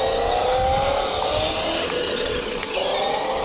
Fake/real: real